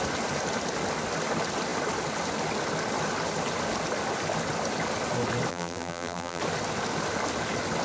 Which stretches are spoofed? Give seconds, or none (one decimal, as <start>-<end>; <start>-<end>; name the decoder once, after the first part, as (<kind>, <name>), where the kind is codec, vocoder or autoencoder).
5.5-6.4 (vocoder, BigVGAN v2)